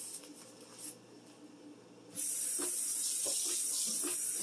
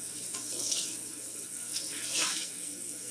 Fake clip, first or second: second